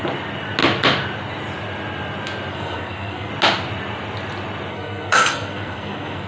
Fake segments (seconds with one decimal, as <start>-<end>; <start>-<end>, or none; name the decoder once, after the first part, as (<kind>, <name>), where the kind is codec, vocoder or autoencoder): 2.5-3.3 (codec, SNAC); 4.7-6.3